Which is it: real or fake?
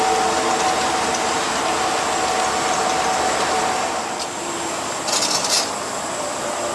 real